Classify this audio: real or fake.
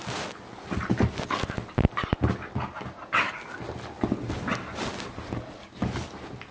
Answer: real